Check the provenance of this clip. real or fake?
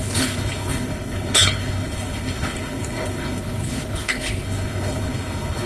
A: fake